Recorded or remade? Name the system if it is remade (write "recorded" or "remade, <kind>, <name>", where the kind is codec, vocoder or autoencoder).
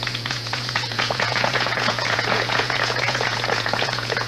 remade, vocoder, Vocos